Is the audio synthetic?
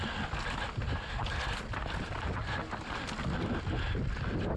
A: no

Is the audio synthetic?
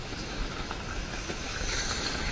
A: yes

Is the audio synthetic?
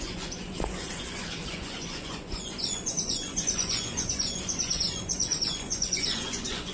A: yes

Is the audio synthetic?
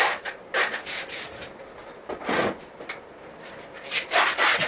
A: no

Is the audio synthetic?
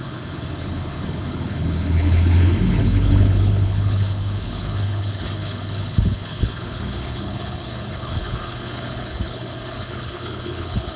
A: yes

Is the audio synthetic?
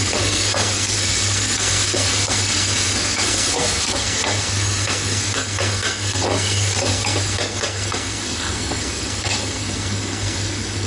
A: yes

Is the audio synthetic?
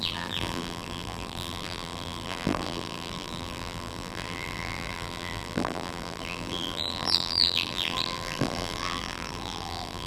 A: yes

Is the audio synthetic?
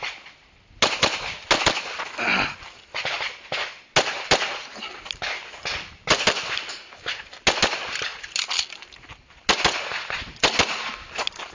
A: no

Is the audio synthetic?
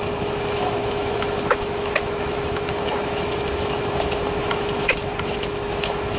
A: yes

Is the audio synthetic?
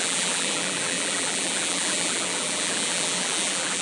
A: yes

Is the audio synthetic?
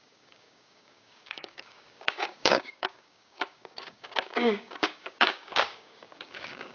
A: yes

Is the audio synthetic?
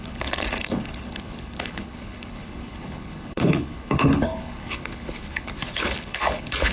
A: yes